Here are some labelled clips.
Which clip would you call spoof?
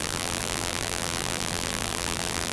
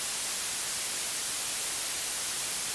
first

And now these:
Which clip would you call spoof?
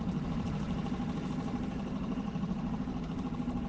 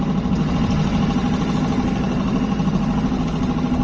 first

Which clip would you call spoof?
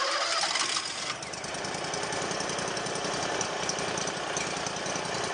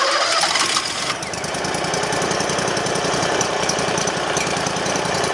second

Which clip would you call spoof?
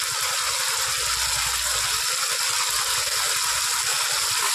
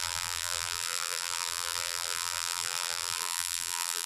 second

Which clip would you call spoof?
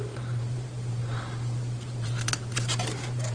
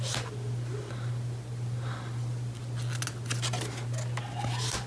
first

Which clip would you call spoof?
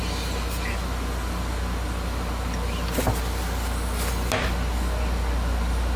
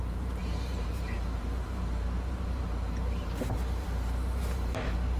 second